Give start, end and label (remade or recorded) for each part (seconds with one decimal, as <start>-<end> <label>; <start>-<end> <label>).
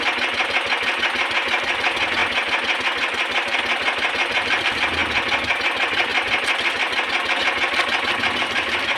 0.0-9.0 recorded